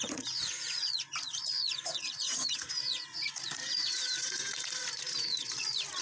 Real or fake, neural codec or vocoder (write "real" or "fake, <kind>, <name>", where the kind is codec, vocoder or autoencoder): fake, vocoder, Vocos